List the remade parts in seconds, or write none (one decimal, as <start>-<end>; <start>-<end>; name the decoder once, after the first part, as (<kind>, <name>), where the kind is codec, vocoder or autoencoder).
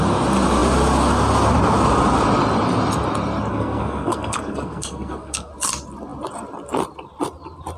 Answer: 3.5-5.5 (codec, SNAC)